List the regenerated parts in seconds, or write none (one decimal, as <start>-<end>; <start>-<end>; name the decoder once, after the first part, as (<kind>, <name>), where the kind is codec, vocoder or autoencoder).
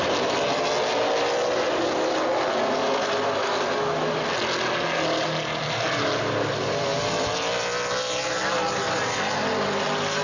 none